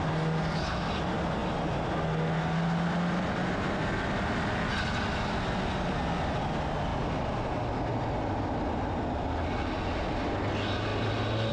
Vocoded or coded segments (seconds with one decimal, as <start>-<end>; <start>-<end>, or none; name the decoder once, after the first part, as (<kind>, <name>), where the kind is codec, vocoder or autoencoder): none